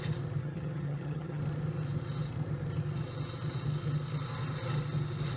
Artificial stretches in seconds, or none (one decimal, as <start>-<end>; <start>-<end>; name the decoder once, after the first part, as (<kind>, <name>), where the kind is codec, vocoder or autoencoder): 0.4-1.4 (vocoder, HiFi-GAN)